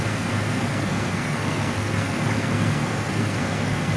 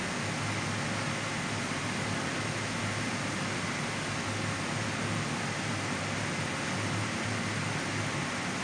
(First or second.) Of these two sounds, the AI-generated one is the first